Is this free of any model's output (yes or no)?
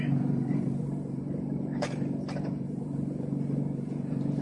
no